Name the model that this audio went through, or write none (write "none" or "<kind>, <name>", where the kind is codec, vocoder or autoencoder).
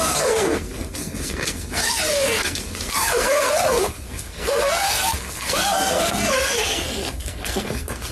codec, SNAC